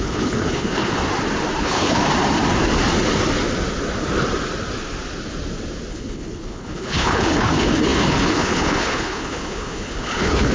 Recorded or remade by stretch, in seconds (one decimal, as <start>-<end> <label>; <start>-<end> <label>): 0.0-1.0 remade; 1.0-1.6 recorded; 1.6-2.0 remade; 2.0-5.9 recorded; 5.9-10.5 remade